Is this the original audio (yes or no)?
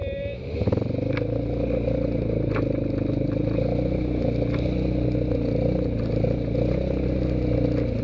yes